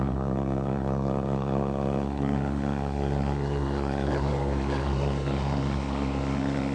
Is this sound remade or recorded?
remade